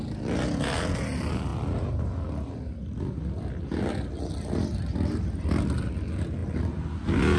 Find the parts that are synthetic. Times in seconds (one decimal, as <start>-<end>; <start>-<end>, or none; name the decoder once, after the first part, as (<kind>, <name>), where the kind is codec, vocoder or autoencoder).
none